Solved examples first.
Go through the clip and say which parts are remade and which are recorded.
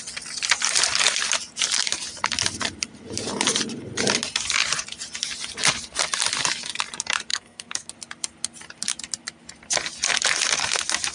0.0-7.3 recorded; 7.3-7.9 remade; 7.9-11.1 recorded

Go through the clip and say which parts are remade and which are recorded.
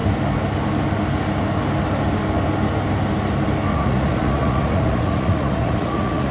0.0-3.7 recorded; 3.7-6.3 remade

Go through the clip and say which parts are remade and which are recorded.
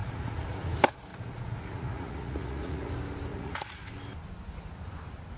0.0-0.7 remade; 0.7-1.1 recorded; 1.1-2.9 remade; 2.9-3.3 recorded; 3.3-3.9 remade; 3.9-5.4 recorded